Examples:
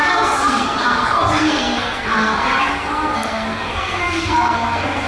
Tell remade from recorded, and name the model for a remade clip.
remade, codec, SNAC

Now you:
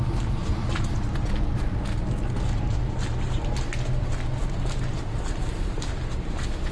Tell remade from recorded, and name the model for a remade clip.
recorded